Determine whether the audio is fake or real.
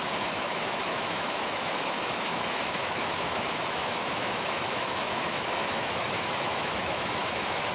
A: fake